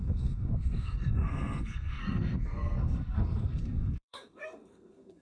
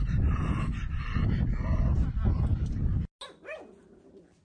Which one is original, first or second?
second